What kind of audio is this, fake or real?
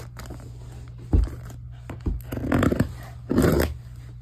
real